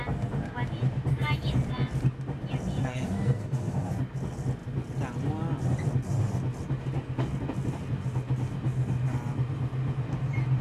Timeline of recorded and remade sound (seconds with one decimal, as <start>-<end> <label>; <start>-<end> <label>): 0.0-2.8 recorded; 2.8-3.9 remade; 3.9-10.6 recorded